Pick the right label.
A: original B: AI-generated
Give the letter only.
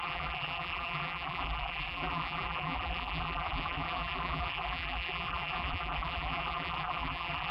B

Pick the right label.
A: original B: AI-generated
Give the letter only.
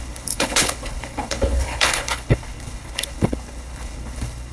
B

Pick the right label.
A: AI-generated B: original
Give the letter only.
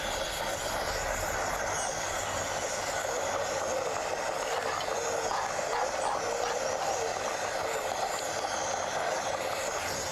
B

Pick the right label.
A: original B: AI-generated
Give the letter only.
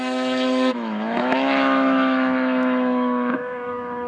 B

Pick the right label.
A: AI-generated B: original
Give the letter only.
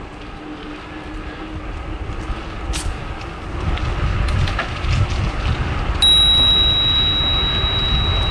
B